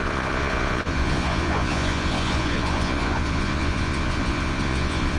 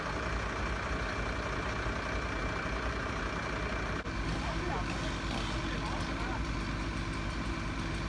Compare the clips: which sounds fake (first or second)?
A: first